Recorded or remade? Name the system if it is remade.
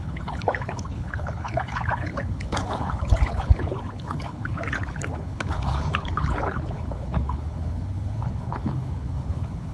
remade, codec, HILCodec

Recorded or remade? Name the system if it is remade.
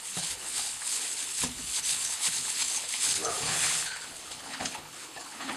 remade, codec, HILCodec